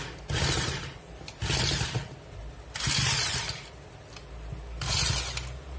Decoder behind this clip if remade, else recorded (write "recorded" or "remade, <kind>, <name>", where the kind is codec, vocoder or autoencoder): recorded